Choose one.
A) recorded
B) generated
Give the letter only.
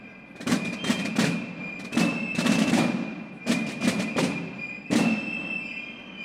A